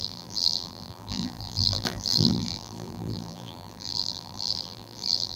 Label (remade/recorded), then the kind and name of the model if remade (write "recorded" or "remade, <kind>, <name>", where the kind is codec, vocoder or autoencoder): remade, vocoder, BigVGAN v2